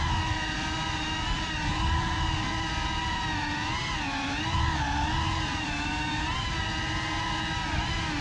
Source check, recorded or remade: recorded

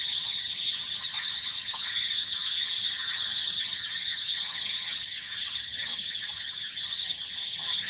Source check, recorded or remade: remade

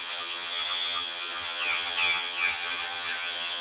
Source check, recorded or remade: remade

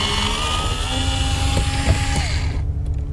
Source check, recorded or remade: recorded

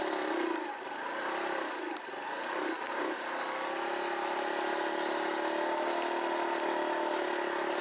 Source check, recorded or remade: recorded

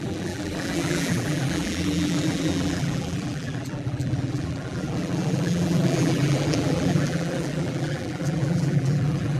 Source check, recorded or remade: remade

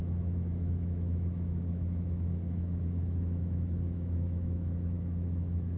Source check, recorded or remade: remade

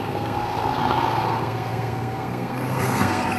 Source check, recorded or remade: remade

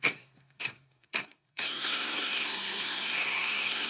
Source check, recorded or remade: remade